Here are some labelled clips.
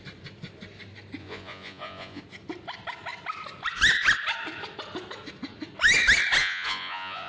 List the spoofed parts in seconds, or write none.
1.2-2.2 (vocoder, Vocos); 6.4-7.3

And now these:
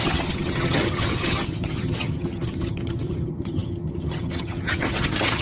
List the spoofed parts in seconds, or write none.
0.0-5.4 (vocoder, HiFi-GAN)

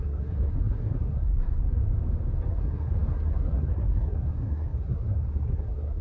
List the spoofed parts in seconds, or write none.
0.0-1.8 (codec, SNAC); 2.5-6.0